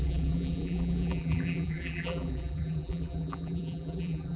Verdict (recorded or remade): remade